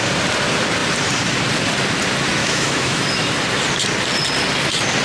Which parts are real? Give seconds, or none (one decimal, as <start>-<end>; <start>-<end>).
0.0-2.4; 3.3-5.0

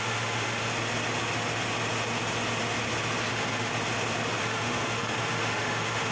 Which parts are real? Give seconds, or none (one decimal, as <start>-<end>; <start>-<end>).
0.7-3.3; 3.7-4.4

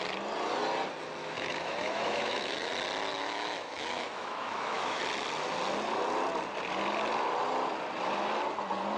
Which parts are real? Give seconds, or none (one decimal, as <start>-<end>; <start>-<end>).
0.0-1.2; 2.7-3.1; 5.0-9.0

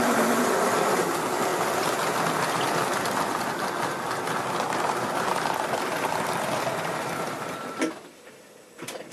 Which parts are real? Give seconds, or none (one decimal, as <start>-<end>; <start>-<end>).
0.0-9.1

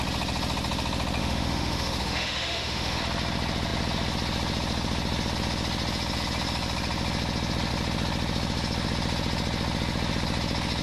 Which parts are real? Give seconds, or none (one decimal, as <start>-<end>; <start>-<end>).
0.0-1.2; 3.0-10.8

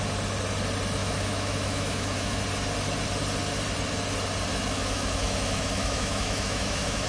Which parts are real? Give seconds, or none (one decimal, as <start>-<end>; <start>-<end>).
0.0-1.0; 2.4-4.5

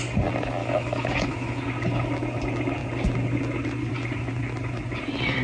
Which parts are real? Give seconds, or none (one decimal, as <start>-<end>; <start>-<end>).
0.0-0.6; 1.6-5.4

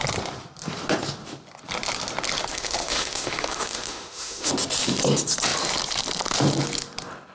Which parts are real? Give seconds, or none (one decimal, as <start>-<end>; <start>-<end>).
0.0-2.5; 4.5-7.3